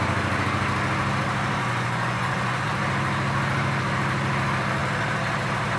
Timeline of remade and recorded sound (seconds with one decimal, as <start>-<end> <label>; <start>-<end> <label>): 0.0-1.6 recorded; 1.6-2.6 remade; 2.6-5.8 recorded